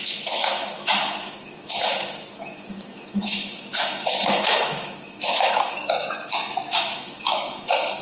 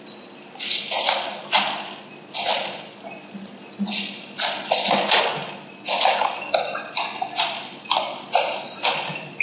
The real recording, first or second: second